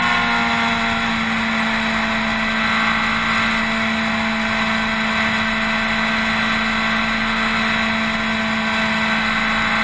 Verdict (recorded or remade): recorded